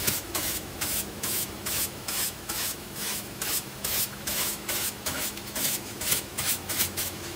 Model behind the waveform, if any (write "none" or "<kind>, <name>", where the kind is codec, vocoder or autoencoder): autoencoder, DAC-VAE